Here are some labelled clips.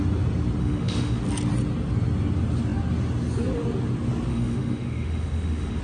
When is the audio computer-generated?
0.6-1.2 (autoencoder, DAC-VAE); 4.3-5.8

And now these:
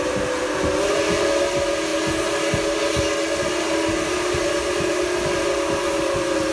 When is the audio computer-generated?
none

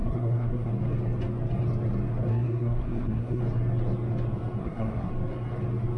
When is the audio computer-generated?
0.0-0.7 (codec, SNAC); 2.3-3.4; 4.6-5.1

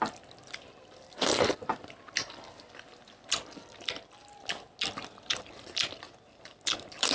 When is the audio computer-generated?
none